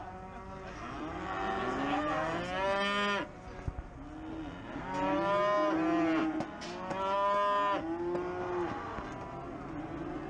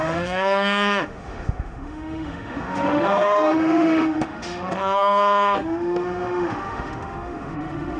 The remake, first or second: second